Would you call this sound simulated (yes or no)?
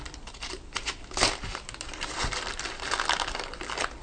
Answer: no